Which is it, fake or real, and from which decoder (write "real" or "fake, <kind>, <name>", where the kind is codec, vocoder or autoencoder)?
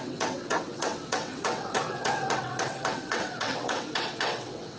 fake, vocoder, WaveNeXt